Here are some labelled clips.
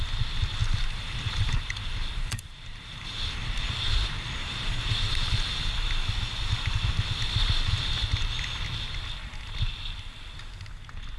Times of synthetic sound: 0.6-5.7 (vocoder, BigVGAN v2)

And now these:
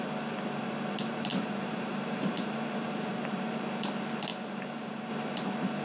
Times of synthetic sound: 1.3-3.2 (vocoder, BigVGAN v2); 4.3-5.1

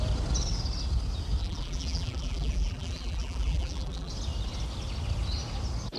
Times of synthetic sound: 1.4-4.1 (vocoder, BigVGAN v2)

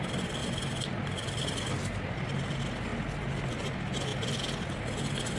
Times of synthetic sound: none

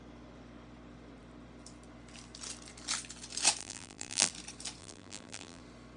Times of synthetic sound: 3.6-4.3 (vocoder, BigVGAN v2); 4.8-5.6

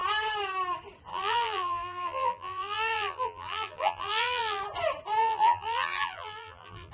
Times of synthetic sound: 1.1-4.6 (vocoder, BigVGAN v2); 5.2-6.9